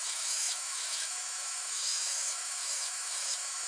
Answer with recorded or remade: remade